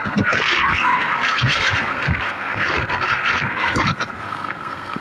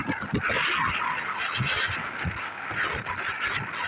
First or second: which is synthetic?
first